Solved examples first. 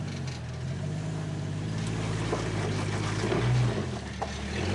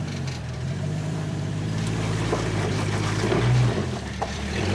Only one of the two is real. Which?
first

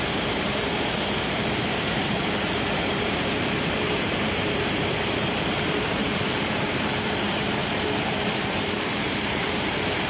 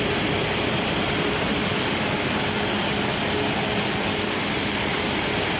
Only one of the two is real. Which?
second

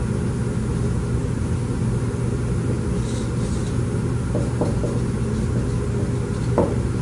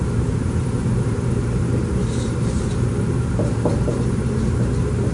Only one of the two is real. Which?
first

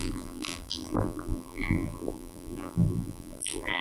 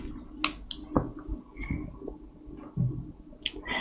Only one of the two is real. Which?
second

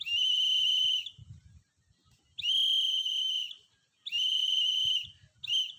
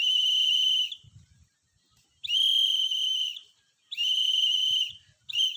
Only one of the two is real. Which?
first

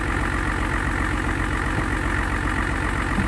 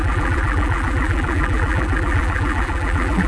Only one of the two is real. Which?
first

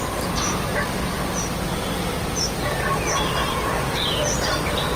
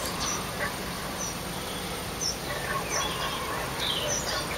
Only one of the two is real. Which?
first